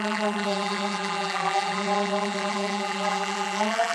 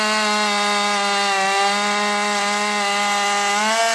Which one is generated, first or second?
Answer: first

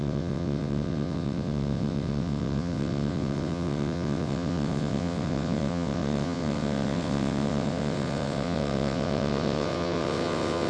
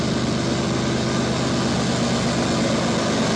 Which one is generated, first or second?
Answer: first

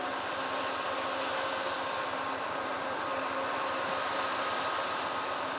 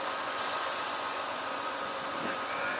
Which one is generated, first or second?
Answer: second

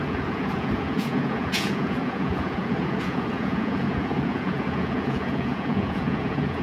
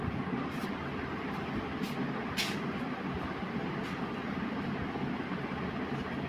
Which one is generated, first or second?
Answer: first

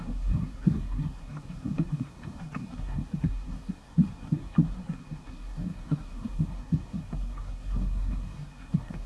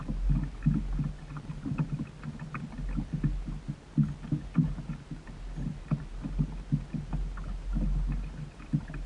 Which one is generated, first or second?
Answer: first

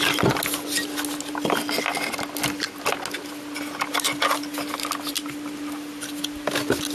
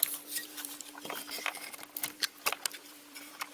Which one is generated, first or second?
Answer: second